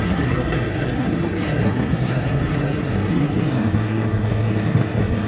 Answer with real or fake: fake